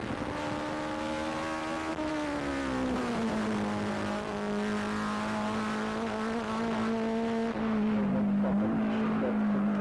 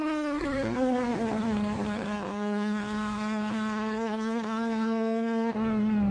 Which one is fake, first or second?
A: second